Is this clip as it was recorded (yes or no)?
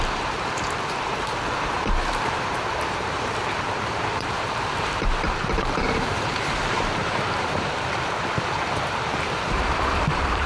no